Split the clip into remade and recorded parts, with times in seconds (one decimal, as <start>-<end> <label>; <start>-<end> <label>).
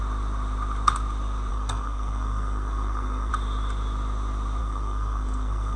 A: 0.0-1.5 recorded; 1.5-3.3 remade; 3.3-4.6 recorded; 4.6-5.8 remade